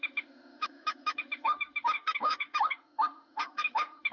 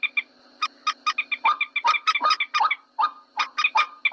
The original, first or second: second